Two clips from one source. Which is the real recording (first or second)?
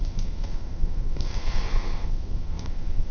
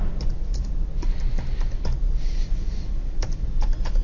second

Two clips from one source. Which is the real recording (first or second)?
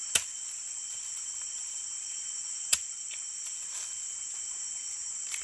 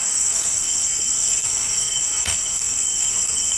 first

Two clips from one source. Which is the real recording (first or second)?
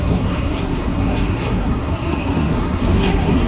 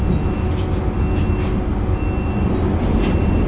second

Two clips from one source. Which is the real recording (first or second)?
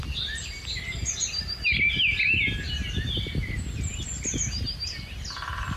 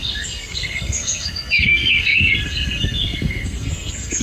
first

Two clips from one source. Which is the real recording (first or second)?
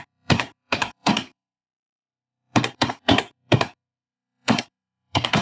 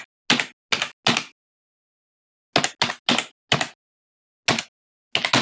second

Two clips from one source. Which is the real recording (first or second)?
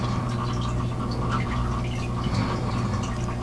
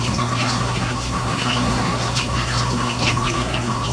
first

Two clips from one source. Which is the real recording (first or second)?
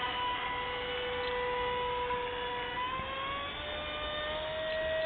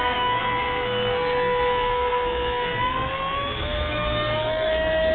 first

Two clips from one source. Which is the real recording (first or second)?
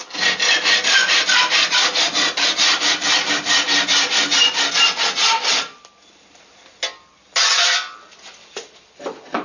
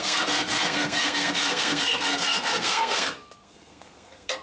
first